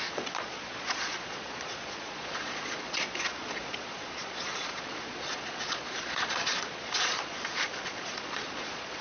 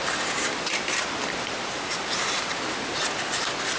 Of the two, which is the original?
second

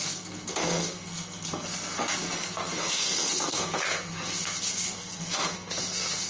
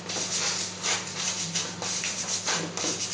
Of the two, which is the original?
second